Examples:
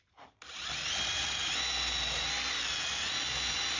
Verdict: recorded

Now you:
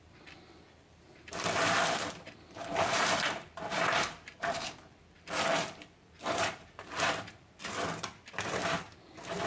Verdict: remade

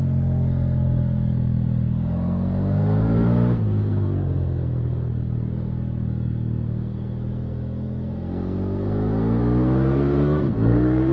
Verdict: remade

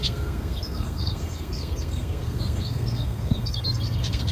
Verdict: remade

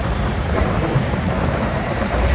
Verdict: remade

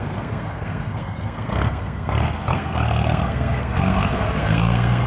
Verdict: remade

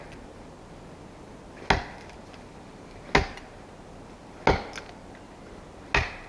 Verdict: recorded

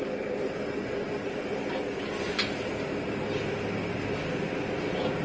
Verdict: recorded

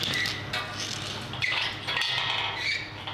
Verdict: recorded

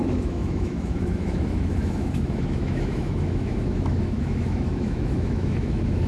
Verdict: remade